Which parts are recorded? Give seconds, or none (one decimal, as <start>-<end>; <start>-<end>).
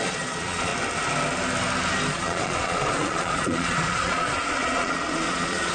0.7-2.1